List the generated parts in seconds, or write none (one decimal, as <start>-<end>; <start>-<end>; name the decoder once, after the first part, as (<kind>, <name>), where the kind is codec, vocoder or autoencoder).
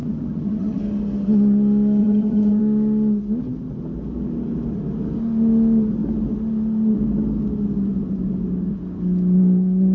0.0-0.8 (vocoder, HiFi-GAN); 2.0-2.6